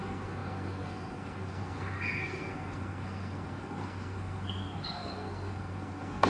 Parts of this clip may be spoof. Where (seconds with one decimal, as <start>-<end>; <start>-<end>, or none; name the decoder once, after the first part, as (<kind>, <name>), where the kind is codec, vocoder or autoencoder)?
0.0-6.3 (codec, SNAC)